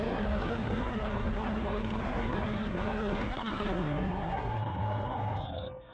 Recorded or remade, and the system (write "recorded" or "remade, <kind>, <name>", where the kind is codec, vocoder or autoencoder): remade, codec, SNAC